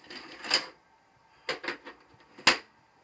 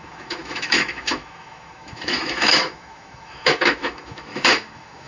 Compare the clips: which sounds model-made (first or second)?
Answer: second